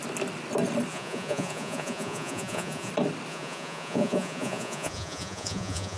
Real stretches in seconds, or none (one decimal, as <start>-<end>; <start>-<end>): 0.0-0.9; 2.9-3.3